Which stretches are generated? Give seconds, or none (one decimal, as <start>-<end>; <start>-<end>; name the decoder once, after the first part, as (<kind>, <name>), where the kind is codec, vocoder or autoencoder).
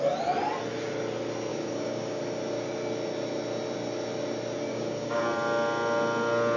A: 1.5-2.2 (codec, DAC); 4.7-5.2